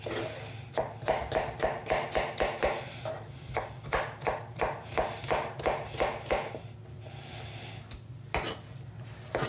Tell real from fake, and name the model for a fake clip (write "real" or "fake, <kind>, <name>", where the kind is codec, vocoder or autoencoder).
real